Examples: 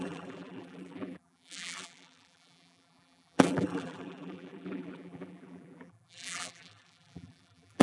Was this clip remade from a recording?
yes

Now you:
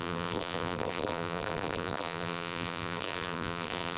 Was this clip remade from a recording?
yes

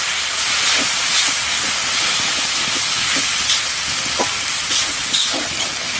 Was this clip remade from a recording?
no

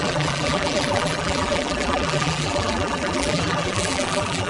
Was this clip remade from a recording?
yes